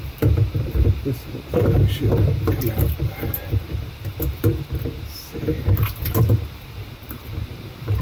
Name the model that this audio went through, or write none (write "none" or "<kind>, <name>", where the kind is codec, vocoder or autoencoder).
vocoder, BigVGAN v2